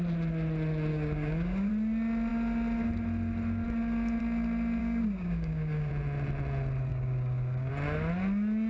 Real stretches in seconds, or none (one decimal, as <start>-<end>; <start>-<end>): 0.0-0.9; 1.7-4.8; 5.9-6.9; 7.7-8.7